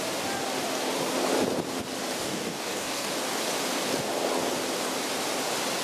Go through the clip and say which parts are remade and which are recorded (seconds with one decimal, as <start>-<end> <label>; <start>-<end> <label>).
0.0-2.2 recorded; 2.2-3.1 remade; 3.1-5.8 recorded